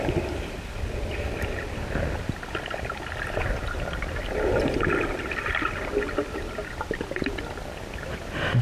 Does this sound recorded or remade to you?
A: recorded